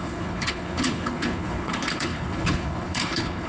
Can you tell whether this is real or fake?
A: fake